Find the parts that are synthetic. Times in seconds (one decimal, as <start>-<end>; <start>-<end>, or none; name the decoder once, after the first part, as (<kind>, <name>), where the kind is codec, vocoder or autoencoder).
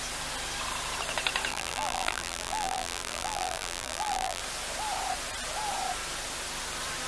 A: 1.5-4.4 (vocoder, BigVGAN v2)